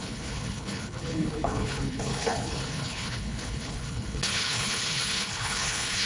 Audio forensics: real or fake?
fake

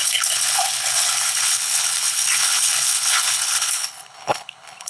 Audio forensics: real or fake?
fake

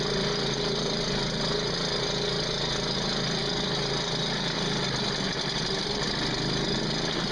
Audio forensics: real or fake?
real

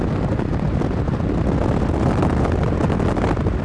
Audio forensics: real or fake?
real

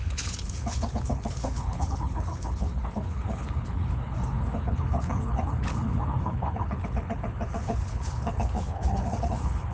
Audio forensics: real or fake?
fake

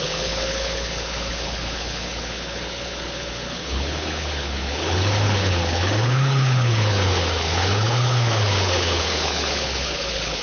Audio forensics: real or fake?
fake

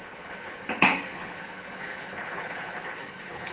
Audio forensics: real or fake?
fake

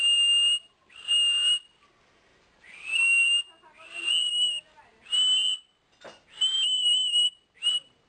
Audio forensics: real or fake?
real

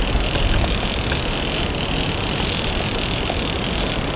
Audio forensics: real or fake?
real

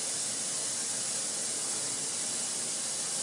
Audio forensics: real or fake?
real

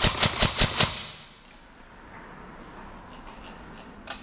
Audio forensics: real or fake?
real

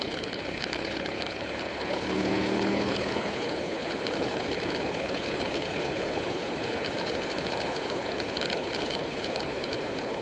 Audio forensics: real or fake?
fake